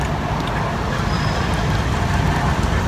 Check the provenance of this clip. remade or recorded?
recorded